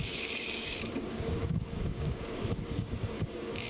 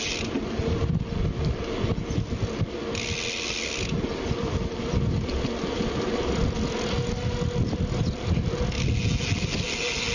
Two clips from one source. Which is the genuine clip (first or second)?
second